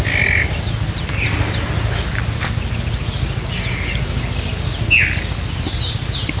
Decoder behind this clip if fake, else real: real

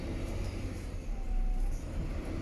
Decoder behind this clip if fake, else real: fake, vocoder, BigVGAN v2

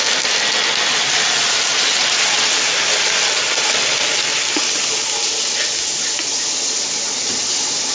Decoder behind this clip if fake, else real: real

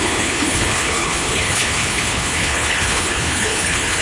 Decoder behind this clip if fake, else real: fake, codec, HILCodec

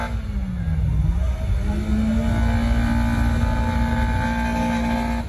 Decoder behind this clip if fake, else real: real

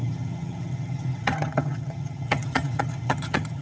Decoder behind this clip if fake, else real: fake, vocoder, HiFi-GAN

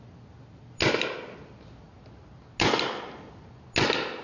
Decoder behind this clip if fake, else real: real